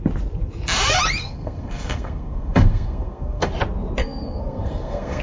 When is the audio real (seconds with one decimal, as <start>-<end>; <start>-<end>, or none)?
0.0-1.2; 3.5-4.0